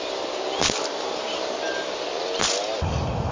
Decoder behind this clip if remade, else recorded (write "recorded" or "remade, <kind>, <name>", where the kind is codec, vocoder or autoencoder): recorded